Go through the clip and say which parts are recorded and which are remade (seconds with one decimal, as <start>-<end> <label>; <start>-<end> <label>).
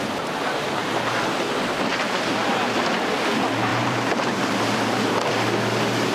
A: 0.0-1.9 recorded; 1.9-2.5 remade; 2.5-3.7 recorded; 3.7-5.1 remade; 5.1-6.1 recorded